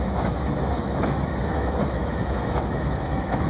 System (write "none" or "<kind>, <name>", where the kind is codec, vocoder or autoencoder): autoencoder, DAC-VAE